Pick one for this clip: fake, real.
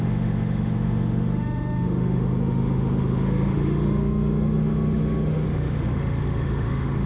fake